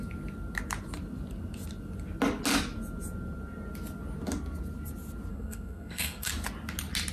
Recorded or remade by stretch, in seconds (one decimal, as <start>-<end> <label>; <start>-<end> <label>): 0.0-5.3 recorded; 5.3-6.3 remade; 6.3-7.1 recorded